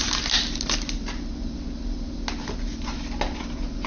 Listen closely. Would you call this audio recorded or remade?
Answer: recorded